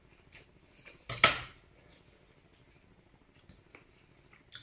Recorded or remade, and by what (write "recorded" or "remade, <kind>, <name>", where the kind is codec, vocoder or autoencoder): recorded